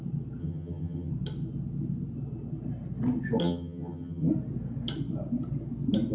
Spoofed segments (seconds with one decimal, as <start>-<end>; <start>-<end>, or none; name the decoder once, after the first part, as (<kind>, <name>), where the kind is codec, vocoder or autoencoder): 0.4-1.1 (vocoder, HiFi-GAN); 3.4-4.3